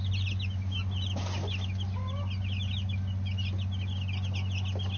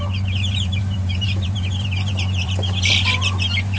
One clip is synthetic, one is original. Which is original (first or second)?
first